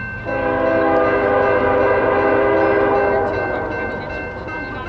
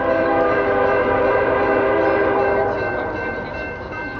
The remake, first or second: second